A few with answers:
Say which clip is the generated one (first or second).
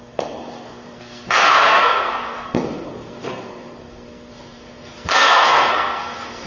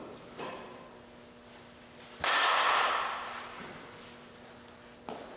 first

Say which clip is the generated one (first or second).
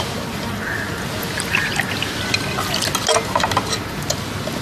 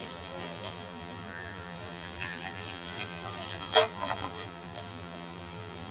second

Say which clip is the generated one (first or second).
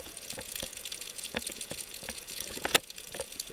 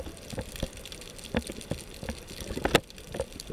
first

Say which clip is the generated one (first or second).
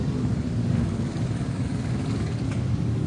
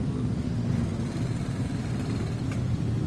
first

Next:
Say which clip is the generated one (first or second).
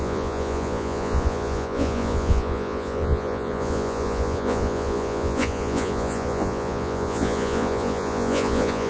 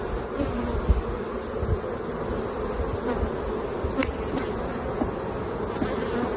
first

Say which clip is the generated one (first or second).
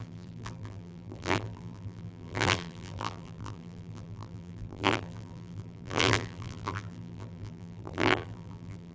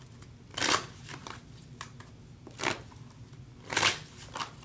first